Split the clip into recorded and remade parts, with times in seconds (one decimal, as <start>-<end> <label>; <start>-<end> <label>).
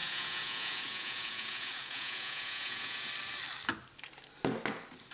0.0-3.1 remade; 3.1-5.1 recorded